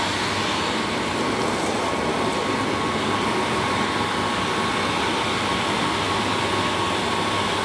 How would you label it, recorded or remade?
recorded